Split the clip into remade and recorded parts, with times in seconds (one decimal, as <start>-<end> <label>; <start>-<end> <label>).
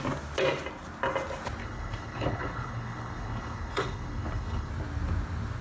0.0-1.6 recorded; 1.6-4.7 remade; 4.7-5.6 recorded